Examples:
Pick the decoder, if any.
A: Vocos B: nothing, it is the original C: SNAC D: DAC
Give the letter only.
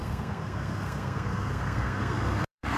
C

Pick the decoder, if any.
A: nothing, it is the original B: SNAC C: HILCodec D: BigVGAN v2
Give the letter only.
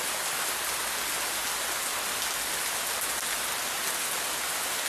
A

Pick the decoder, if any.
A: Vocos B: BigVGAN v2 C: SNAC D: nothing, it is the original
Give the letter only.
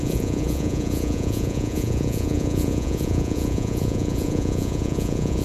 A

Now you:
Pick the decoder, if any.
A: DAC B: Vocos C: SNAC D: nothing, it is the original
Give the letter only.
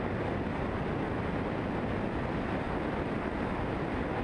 D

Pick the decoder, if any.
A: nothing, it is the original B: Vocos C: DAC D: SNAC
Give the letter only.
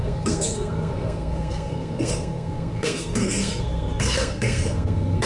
D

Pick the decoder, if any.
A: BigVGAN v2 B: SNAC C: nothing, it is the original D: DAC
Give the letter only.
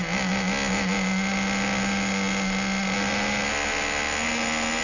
C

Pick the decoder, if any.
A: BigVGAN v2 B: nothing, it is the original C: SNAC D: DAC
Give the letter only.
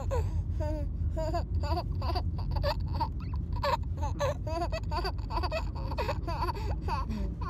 B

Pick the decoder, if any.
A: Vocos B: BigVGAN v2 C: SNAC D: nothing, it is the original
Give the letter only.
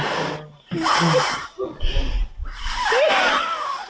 D